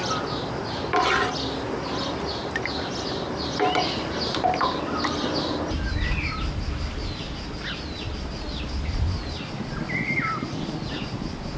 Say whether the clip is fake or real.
real